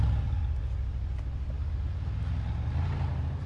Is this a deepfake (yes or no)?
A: no